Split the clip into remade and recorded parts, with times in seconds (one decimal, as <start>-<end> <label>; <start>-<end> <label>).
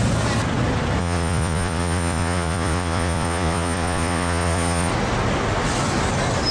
0.0-1.0 recorded; 1.0-4.9 remade; 4.9-6.5 recorded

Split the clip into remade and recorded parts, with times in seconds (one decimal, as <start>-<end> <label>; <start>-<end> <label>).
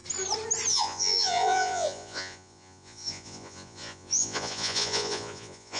0.0-0.7 recorded; 0.7-5.8 remade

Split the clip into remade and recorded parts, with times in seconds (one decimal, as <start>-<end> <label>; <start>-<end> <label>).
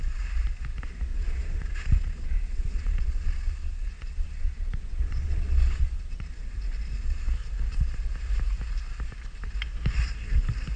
0.0-1.1 recorded; 1.1-6.3 remade; 6.3-10.8 recorded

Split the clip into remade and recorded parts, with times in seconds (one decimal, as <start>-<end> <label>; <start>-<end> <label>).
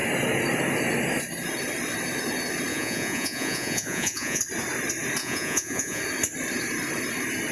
0.0-2.7 recorded; 2.7-4.4 remade; 4.4-5.2 recorded; 5.2-6.0 remade; 6.0-7.5 recorded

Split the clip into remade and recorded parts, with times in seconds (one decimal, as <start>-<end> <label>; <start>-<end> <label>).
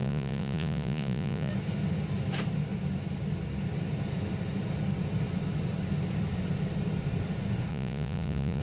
0.0-1.5 remade; 1.5-7.7 recorded; 7.7-8.6 remade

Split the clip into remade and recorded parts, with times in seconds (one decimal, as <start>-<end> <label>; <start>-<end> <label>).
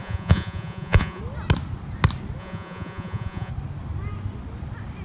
0.0-1.2 remade; 1.2-2.4 recorded; 2.4-3.5 remade; 3.5-5.0 recorded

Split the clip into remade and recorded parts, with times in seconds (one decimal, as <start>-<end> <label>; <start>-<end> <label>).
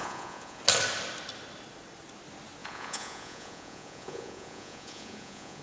0.0-0.6 remade; 0.6-2.6 recorded; 2.6-5.6 remade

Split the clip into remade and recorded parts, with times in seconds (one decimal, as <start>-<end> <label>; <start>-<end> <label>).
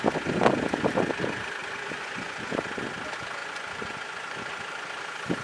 0.0-1.6 recorded; 1.6-2.5 remade; 2.5-3.4 recorded; 3.4-5.0 remade; 5.0-5.4 recorded